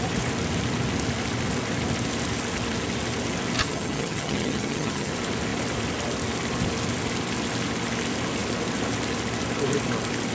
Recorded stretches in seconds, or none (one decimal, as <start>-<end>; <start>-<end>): 0.0-3.6; 5.1-10.3